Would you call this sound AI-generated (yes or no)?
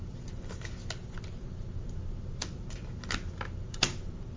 no